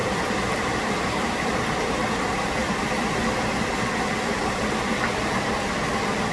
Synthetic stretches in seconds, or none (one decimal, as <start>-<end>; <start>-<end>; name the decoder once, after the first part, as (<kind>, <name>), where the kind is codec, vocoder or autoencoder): 0.0-2.1 (vocoder, BigVGAN v2); 2.6-5.6